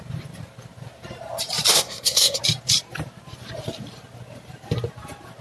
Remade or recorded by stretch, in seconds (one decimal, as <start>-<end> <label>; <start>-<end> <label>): 0.0-1.7 recorded; 1.7-2.4 remade; 2.4-5.4 recorded